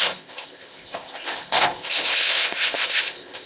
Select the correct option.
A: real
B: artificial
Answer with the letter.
B